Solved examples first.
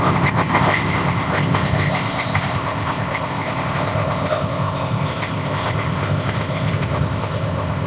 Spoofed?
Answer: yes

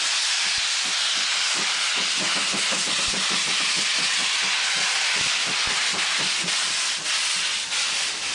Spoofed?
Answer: no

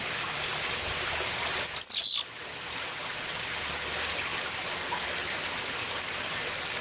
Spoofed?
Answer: no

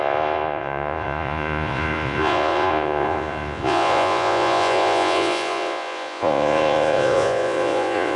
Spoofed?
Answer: yes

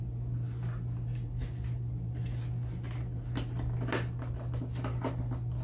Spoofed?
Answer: no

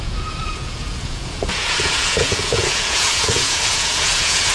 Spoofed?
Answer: yes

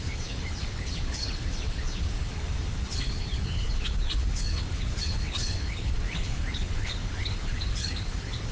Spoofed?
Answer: yes